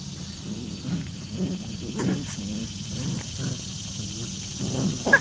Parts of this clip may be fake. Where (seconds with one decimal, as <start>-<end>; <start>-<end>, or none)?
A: 2.6-3.3; 4.5-5.2